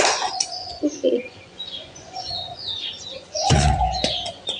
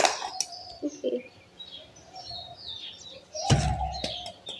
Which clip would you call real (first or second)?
second